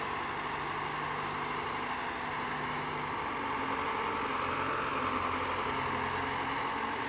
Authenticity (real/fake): real